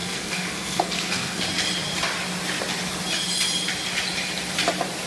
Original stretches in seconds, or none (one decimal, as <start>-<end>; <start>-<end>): 1.4-5.1

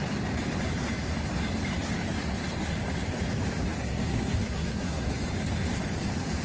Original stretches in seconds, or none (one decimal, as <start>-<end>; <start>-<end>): 0.0-3.7; 5.1-6.4